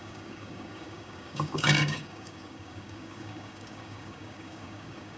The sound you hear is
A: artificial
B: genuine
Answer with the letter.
A